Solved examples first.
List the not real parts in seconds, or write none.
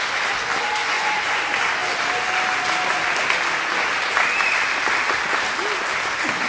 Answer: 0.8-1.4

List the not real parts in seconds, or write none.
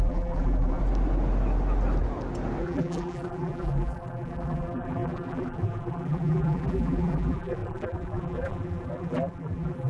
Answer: 0.0-0.8; 2.6-9.9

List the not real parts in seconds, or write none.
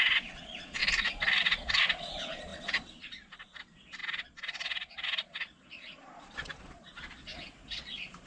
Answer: 0.0-0.8; 1.4-7.3; 7.8-8.3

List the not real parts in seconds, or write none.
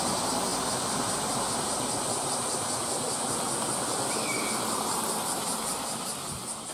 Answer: none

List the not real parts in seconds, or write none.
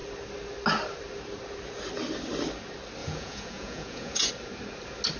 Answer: 3.0-4.3